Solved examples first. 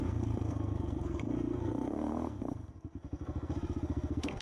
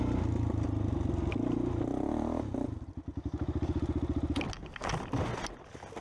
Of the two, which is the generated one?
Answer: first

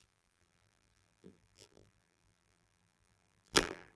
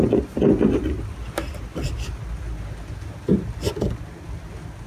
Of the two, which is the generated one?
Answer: first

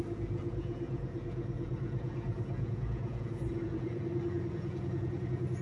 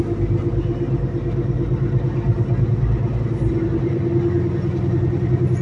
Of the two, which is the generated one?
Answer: first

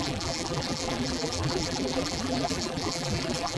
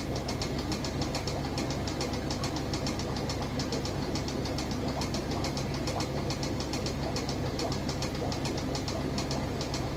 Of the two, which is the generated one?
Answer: first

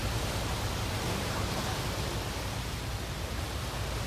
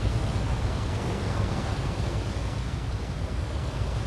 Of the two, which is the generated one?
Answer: second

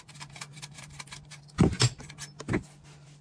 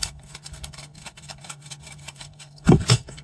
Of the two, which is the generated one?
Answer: second